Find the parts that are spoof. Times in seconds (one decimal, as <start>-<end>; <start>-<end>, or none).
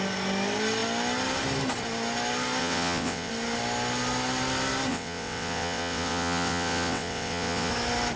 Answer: 2.6-3.3; 4.9-7.7